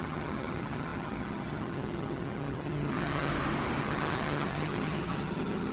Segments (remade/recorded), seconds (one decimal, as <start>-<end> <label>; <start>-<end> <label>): 0.0-3.3 remade; 3.3-3.8 recorded; 3.8-5.7 remade